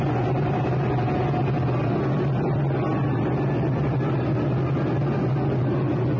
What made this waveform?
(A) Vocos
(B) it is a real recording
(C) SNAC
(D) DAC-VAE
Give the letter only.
B